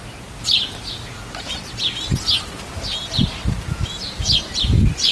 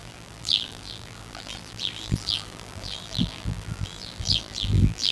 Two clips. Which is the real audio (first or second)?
first